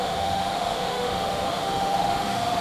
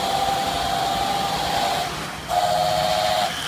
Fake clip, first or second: first